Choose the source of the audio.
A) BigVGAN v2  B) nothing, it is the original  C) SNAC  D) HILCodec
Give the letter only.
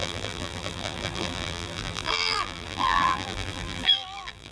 A